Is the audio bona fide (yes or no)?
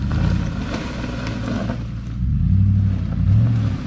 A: yes